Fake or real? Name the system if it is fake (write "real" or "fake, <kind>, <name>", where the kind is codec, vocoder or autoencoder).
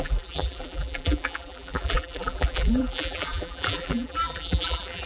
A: fake, vocoder, BigVGAN v2